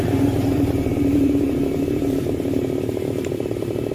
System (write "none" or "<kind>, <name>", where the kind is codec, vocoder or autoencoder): vocoder, BigVGAN v2